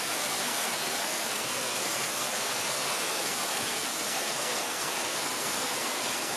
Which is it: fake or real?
fake